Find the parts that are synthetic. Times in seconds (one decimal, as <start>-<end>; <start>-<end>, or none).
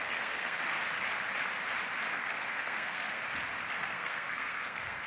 0.0-0.6; 2.1-3.2; 3.8-5.1